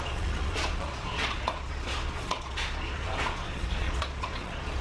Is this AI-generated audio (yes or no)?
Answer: yes